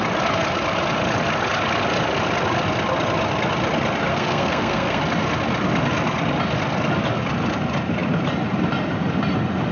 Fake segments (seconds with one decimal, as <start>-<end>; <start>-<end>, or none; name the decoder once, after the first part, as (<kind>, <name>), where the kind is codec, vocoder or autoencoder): 4.1-5.0 (codec, SNAC)